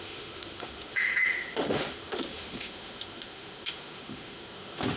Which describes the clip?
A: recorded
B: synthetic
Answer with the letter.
B